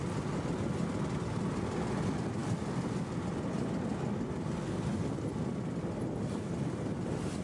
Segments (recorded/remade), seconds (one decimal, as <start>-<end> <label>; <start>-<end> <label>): 0.0-7.4 recorded